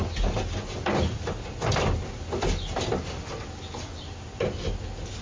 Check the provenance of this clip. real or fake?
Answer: real